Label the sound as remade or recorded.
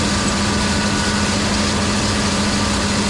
recorded